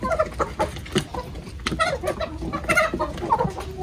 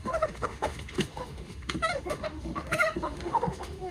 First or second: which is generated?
second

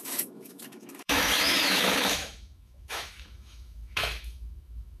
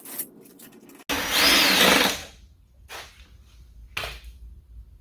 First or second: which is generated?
first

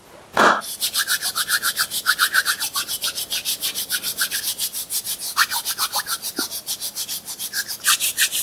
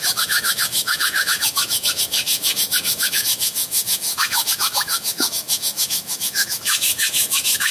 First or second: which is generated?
second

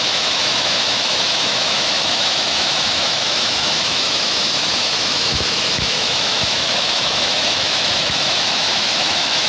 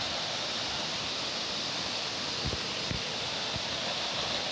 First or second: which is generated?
first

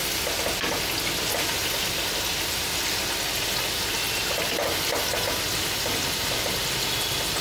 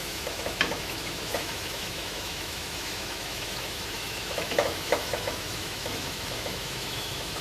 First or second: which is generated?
second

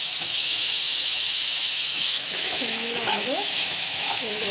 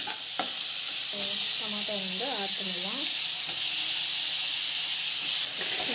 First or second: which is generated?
first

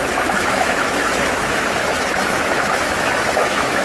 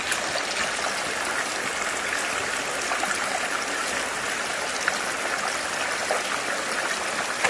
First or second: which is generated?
first